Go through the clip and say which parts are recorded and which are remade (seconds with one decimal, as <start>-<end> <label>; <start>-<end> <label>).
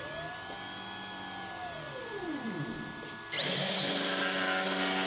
0.0-5.1 recorded